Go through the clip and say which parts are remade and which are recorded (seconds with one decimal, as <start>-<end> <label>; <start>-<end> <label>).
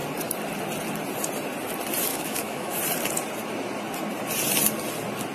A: 0.0-2.1 recorded; 2.1-2.8 remade; 2.8-5.3 recorded